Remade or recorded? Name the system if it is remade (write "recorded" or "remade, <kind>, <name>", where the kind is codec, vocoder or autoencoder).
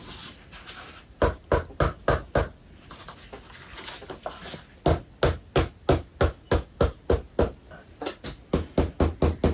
recorded